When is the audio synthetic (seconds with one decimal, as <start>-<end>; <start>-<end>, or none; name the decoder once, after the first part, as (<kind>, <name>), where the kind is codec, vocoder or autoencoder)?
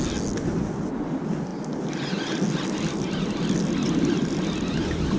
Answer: none